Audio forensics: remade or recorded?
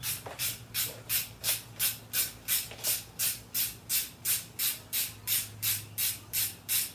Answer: recorded